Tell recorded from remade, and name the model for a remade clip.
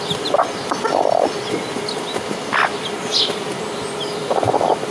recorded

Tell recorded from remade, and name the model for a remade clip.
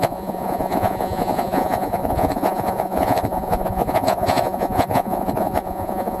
remade, vocoder, Vocos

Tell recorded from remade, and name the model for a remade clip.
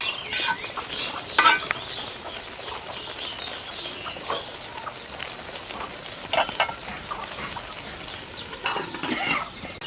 recorded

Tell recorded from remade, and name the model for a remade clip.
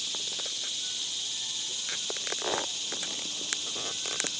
recorded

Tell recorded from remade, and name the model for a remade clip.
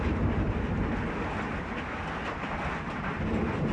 recorded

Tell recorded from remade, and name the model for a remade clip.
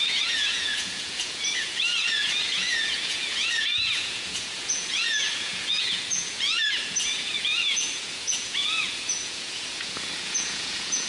remade, vocoder, Vocos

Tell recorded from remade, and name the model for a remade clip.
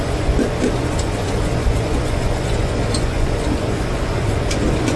remade, vocoder, Vocos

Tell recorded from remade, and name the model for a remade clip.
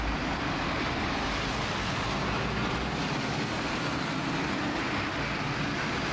recorded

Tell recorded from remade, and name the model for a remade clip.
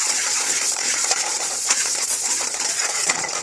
remade, vocoder, Vocos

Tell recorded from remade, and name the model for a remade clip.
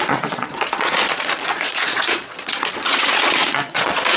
remade, vocoder, Vocos